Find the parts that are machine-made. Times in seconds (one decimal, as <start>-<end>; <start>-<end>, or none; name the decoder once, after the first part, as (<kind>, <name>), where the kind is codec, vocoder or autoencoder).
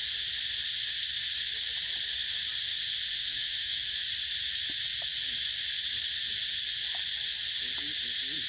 3.1-3.9 (autoencoder, DAC-VAE)